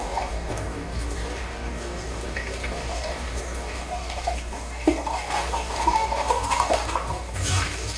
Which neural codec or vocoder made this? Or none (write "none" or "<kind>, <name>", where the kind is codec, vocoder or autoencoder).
codec, DAC